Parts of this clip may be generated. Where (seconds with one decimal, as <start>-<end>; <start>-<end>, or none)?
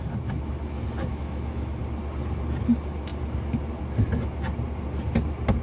1.1-1.8